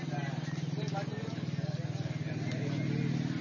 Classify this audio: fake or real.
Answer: real